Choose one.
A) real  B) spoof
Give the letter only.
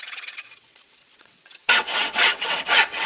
B